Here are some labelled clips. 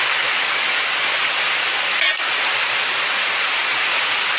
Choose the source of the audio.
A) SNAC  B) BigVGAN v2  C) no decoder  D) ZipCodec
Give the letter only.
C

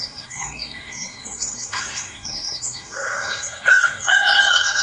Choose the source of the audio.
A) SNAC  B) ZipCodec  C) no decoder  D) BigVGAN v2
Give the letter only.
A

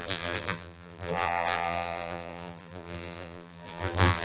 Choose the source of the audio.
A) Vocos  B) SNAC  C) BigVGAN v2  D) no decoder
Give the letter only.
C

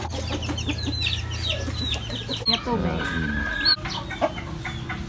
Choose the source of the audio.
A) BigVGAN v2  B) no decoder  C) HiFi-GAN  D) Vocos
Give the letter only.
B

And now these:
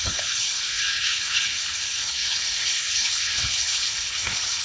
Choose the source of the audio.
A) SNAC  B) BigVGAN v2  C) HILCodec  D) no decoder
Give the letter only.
C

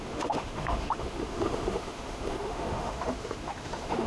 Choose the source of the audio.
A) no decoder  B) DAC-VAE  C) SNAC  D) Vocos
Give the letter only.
B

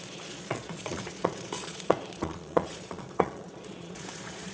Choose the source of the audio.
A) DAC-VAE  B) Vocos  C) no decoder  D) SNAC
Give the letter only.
B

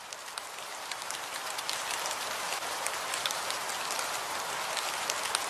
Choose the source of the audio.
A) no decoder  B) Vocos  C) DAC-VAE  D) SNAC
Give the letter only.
A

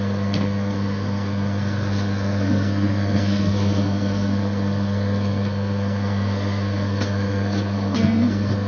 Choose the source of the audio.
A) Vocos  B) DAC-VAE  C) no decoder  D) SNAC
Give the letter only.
D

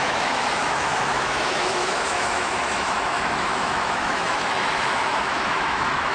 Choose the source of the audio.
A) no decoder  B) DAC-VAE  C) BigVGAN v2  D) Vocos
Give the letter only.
B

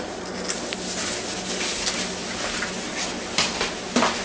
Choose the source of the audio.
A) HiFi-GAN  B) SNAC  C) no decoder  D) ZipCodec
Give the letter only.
C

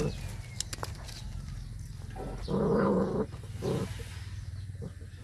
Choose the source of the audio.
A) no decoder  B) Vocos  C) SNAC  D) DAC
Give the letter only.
A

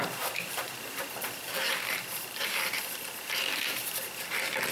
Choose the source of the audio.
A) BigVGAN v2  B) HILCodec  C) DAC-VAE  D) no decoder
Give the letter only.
A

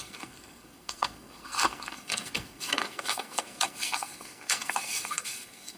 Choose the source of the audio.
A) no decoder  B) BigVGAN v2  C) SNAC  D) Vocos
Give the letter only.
C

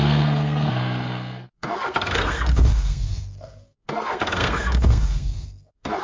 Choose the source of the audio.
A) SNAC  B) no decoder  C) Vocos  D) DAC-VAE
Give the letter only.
A